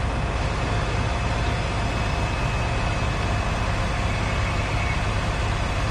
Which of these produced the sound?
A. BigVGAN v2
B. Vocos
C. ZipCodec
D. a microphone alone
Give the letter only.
D